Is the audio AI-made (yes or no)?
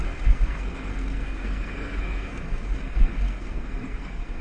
yes